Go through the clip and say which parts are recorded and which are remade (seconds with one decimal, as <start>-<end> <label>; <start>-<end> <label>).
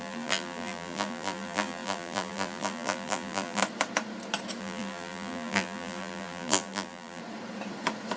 0.0-3.6 remade; 3.6-4.6 recorded; 4.6-7.2 remade; 7.2-8.2 recorded